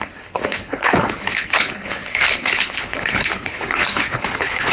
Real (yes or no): no